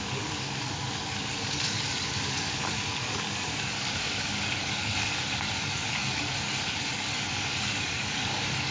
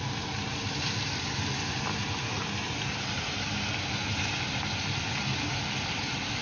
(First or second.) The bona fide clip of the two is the second